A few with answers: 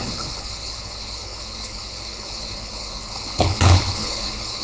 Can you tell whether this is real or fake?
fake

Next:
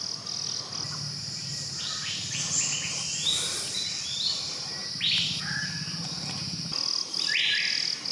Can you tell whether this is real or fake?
real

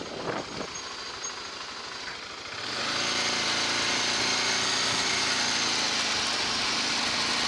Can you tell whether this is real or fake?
real